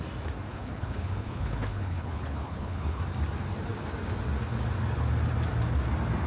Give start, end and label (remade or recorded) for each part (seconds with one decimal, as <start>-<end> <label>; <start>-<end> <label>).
0.0-0.5 recorded; 0.5-3.0 remade; 3.0-6.3 recorded